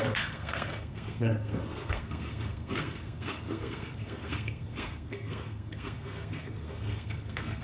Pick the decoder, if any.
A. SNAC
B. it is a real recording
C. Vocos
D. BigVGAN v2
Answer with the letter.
A